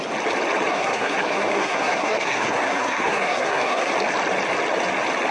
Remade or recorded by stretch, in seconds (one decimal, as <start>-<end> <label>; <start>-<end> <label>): 0.0-0.7 recorded; 0.7-3.9 remade; 3.9-5.3 recorded